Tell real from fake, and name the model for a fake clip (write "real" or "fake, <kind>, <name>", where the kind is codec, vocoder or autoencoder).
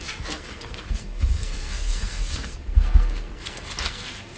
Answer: fake, codec, SNAC